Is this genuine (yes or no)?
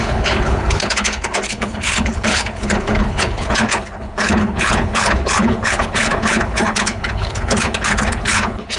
no